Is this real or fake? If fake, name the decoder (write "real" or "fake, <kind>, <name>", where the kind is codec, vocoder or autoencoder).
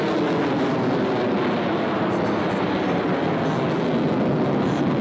real